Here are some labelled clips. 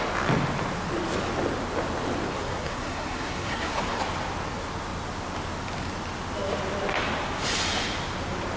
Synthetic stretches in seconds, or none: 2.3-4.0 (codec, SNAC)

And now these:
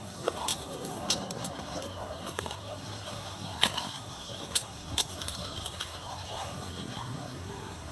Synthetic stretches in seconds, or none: 0.0-7.9 (codec, SNAC)